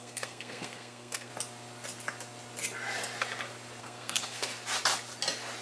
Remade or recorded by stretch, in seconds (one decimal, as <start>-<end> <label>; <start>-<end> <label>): 0.0-1.3 remade; 1.3-3.8 recorded; 3.8-4.5 remade; 4.5-5.6 recorded